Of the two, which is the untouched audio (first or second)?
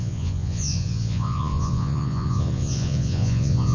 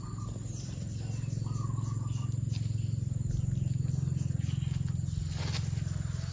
second